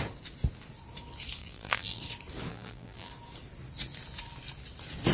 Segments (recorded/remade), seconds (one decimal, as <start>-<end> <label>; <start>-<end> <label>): 0.0-1.4 recorded; 1.4-2.0 remade; 2.0-2.5 recorded; 2.5-3.1 remade; 3.1-5.1 recorded